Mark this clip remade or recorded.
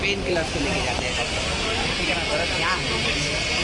recorded